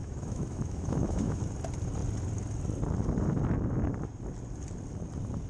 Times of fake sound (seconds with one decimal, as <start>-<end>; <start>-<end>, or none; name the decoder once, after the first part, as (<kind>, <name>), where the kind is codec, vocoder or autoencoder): 0.0-1.4 (autoencoder, DAC-VAE)